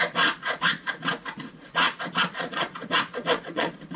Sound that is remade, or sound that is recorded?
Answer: remade